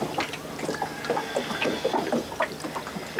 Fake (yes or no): no